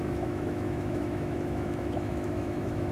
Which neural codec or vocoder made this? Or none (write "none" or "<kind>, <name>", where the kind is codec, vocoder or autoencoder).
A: autoencoder, DAC-VAE